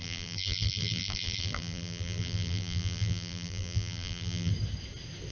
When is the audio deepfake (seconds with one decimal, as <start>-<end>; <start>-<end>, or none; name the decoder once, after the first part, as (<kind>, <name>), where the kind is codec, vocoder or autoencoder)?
0.0-4.5 (vocoder, BigVGAN v2)